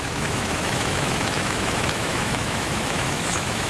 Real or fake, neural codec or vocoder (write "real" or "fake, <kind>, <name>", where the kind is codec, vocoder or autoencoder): fake, autoencoder, DAC-VAE